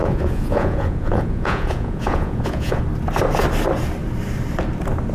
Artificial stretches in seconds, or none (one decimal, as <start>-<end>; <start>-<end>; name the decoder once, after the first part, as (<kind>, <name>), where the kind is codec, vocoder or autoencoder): 0.0-2.8 (vocoder, Vocos)